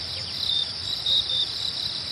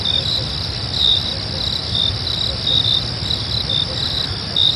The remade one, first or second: first